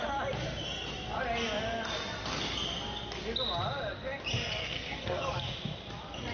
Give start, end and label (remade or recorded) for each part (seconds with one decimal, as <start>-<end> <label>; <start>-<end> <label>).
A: 0.0-4.6 recorded; 4.6-5.3 remade; 5.3-6.3 recorded

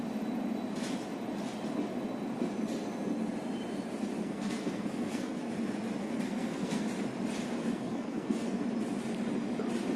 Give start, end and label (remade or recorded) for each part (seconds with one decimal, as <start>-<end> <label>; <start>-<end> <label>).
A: 0.0-4.2 recorded; 4.2-5.5 remade; 5.5-6.0 recorded; 6.0-6.9 remade; 6.9-7.6 recorded; 7.6-8.6 remade; 8.6-10.0 recorded

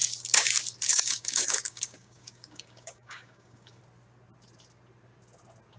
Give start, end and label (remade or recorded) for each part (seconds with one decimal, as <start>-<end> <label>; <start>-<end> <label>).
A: 0.0-0.5 remade; 0.5-0.9 recorded; 0.9-3.8 remade; 3.8-5.8 recorded

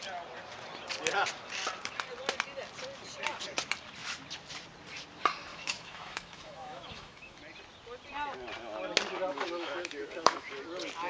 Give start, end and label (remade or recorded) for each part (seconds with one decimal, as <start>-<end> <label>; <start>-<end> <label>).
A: 0.0-5.5 recorded; 5.5-7.4 remade; 7.4-9.3 recorded; 9.3-10.5 remade; 10.5-11.1 recorded

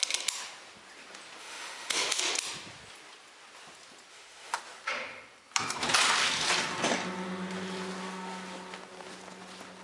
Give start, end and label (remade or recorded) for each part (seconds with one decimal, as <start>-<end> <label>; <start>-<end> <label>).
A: 0.0-1.4 recorded; 1.4-2.3 remade; 2.3-4.1 recorded; 4.1-4.6 remade; 4.6-9.8 recorded

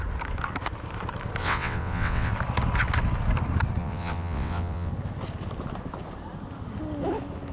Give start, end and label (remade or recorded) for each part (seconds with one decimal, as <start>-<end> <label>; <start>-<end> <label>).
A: 0.0-1.4 recorded; 1.4-2.3 remade; 2.3-3.8 recorded; 3.8-4.9 remade; 4.9-7.5 recorded

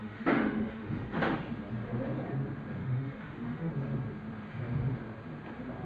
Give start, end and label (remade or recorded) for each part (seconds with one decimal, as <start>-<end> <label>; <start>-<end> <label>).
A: 0.0-1.4 remade; 1.4-2.8 recorded; 2.8-3.7 remade; 3.7-5.8 recorded